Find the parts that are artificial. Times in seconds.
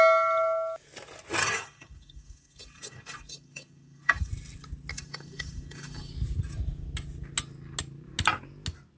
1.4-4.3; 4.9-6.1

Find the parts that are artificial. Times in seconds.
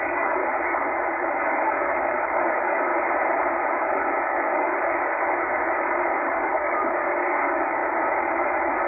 0.0-0.4; 1.4-2.9; 3.7-8.9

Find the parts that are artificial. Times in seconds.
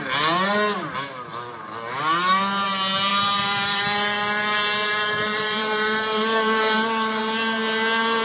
3.1-7.2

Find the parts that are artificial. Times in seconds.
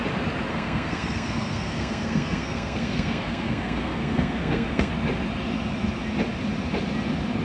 0.5-4.9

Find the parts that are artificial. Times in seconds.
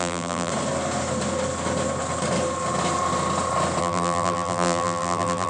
0.0-0.5; 3.8-5.5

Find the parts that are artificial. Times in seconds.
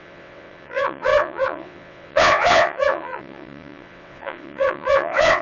0.0-5.4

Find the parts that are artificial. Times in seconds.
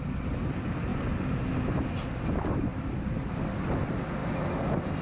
none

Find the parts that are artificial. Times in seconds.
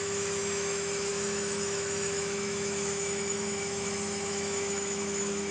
0.0-5.5